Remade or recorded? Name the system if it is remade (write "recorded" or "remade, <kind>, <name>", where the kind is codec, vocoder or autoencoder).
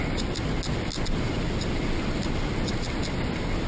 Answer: recorded